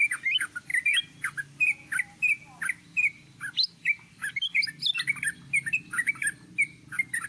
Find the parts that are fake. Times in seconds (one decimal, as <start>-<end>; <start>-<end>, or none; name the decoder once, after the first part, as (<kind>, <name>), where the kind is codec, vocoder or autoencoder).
none